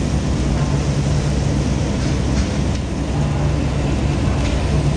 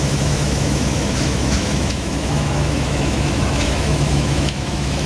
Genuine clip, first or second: first